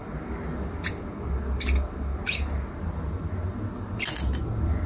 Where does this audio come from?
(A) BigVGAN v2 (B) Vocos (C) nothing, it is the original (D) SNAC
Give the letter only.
C